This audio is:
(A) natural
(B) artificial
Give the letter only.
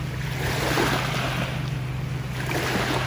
A